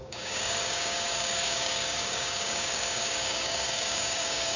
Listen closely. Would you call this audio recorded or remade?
remade